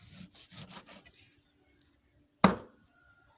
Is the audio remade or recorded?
recorded